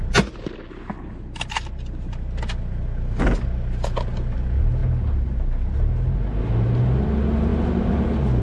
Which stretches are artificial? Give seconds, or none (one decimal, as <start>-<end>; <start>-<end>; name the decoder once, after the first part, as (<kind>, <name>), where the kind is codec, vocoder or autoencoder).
none